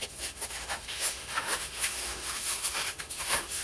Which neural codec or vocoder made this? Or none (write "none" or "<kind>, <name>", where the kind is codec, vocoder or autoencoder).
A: autoencoder, DAC-VAE